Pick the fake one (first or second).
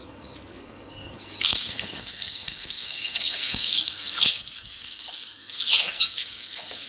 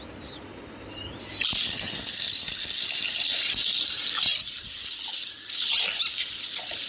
first